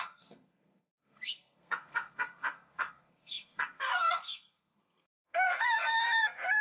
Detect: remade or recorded remade